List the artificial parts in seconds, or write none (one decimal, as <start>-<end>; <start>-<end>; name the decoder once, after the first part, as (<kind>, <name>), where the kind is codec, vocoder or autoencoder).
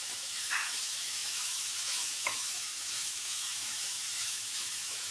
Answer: 0.0-5.1 (autoencoder, DAC-VAE)